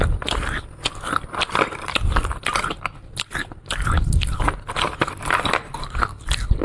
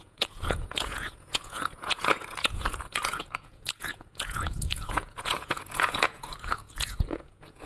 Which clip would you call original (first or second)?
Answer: first